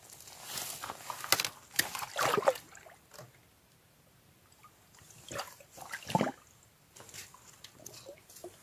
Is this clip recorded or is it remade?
recorded